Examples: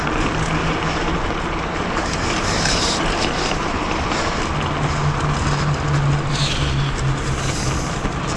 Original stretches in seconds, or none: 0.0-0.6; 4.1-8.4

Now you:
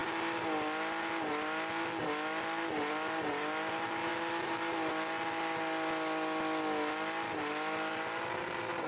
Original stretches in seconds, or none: 0.0-8.9

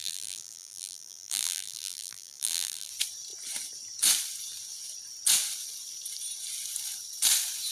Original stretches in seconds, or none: 2.9-7.7

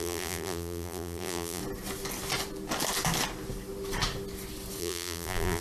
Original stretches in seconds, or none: 1.6-4.8

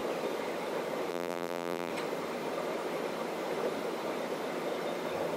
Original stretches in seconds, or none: 0.0-1.1; 1.9-5.4

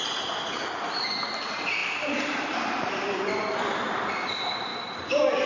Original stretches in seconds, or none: 0.0-1.8; 2.9-4.7